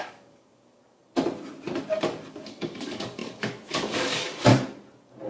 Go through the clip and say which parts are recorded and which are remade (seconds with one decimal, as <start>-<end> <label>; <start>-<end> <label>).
0.0-1.0 remade; 1.0-2.3 recorded; 2.3-4.5 remade; 4.5-5.3 recorded